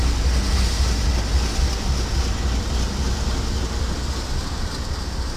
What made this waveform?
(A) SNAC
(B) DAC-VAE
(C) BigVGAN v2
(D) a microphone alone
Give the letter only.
D